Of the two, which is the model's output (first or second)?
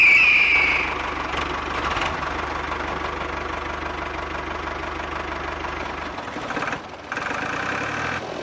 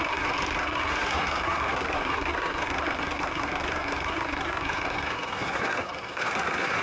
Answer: second